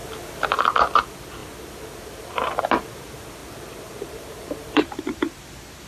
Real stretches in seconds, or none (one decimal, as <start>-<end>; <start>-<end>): 0.0-3.4; 4.9-5.9